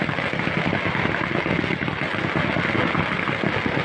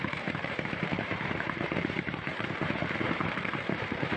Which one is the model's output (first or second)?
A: second